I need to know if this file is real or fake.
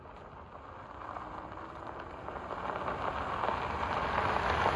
real